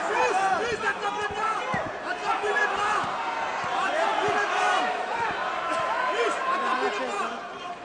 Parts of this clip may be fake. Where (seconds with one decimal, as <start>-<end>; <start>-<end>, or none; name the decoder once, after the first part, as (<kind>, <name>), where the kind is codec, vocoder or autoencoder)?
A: 0.0-0.6 (vocoder, BigVGAN v2); 1.3-7.8